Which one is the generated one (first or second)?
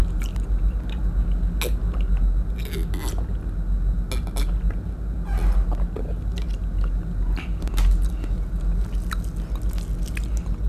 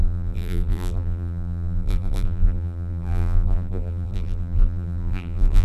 second